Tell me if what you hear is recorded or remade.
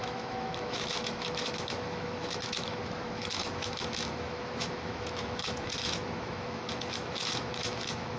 remade